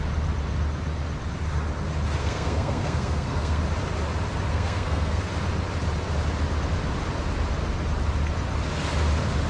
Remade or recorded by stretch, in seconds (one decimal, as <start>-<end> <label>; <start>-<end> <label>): 0.0-2.2 recorded; 2.2-3.6 remade; 3.6-4.5 recorded; 4.5-5.3 remade; 5.3-9.5 recorded